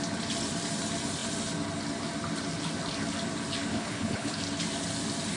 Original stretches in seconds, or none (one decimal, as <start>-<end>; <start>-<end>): 0.0-3.7; 4.4-5.4